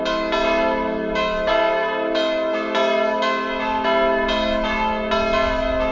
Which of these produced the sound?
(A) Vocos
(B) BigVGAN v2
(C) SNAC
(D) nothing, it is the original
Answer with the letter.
D